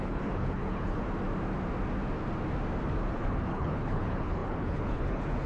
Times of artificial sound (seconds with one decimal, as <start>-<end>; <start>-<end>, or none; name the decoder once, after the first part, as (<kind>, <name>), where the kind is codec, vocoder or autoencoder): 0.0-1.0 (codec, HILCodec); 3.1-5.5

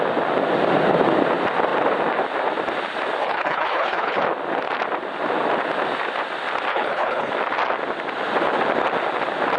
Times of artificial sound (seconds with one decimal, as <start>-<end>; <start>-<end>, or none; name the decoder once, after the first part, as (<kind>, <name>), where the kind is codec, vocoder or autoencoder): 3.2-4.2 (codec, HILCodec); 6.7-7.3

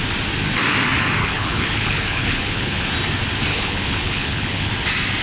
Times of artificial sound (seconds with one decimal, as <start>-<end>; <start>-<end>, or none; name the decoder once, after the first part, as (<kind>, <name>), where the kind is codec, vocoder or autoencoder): 1.2-2.9 (codec, HILCodec); 3.5-4.7

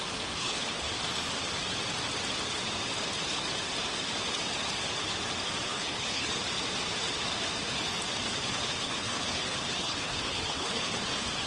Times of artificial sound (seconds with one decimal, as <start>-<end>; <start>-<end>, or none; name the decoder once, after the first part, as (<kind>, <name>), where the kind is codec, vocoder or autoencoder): 0.4-0.9 (codec, HILCodec); 5.7-6.3; 8.8-11.0

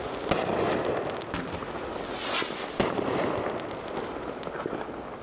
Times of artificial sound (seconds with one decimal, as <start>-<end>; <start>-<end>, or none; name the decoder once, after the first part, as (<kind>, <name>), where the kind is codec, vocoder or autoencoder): none

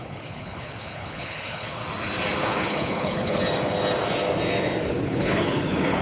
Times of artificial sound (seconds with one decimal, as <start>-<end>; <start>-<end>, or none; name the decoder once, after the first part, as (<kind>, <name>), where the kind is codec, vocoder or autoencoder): 0.0-1.8 (codec, HILCodec); 2.4-3.4; 4.9-6.0

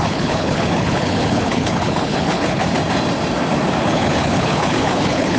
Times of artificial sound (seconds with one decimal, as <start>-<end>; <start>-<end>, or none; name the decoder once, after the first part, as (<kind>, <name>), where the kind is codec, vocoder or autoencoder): 0.0-2.6 (codec, HILCodec); 3.8-5.4

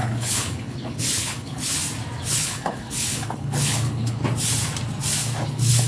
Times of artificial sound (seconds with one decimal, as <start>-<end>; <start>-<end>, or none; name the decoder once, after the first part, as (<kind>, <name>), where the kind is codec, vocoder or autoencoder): 0.0-1.8 (codec, HILCodec); 2.3-4.2; 5.4-5.9